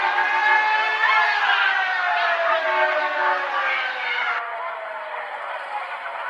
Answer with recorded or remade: recorded